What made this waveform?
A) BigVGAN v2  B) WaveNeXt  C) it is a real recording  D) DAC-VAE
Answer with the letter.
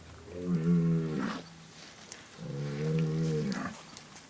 C